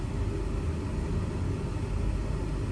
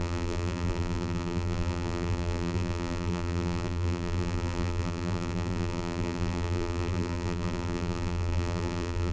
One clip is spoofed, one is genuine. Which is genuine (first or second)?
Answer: first